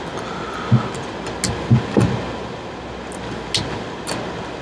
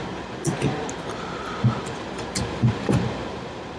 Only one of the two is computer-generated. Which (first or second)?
second